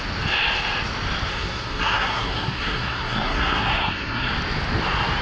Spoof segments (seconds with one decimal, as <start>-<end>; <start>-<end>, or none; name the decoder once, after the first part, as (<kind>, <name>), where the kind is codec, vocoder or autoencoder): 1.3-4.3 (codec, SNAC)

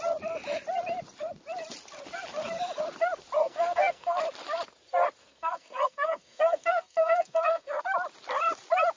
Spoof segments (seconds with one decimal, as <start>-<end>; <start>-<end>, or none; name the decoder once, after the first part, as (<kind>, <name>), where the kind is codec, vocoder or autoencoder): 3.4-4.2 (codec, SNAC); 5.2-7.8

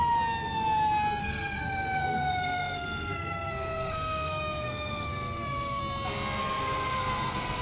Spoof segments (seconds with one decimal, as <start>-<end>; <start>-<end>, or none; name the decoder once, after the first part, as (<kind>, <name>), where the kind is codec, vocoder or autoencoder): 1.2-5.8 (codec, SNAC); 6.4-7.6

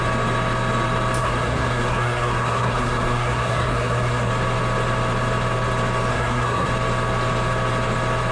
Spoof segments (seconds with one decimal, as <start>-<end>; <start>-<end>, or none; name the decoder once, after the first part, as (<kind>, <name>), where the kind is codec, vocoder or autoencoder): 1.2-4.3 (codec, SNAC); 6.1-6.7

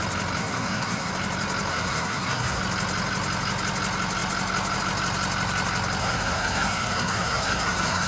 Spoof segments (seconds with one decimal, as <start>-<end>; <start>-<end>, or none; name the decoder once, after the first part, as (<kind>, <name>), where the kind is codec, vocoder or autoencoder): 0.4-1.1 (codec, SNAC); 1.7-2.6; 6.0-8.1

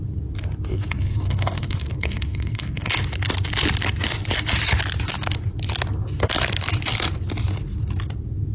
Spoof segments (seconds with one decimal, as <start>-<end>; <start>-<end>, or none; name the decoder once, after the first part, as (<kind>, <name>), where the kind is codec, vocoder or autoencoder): 0.7-2.9 (codec, SNAC)

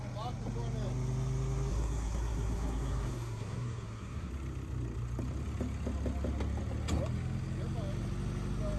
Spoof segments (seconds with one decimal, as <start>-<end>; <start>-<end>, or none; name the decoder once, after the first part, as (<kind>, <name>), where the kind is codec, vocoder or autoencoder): 1.7-4.3 (codec, SNAC)

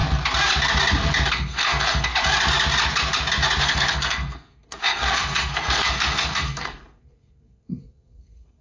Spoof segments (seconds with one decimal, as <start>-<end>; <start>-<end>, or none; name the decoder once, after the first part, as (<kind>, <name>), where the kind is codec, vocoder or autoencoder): 1.3-2.1 (codec, SNAC); 3.6-8.6